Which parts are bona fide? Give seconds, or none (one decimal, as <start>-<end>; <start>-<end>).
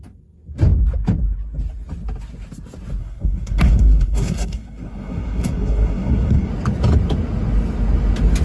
0.0-3.0; 6.5-8.4